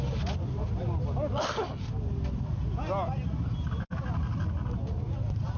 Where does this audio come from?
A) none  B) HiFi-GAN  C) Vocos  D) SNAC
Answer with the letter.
A